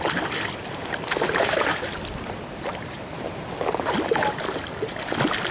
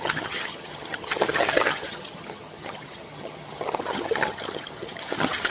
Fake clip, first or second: second